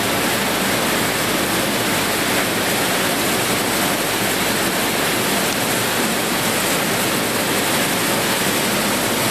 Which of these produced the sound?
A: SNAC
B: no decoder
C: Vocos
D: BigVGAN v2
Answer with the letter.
B